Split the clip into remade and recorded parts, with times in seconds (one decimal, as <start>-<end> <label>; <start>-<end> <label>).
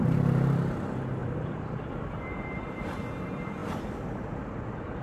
0.0-1.2 recorded; 1.2-2.8 remade; 2.8-5.0 recorded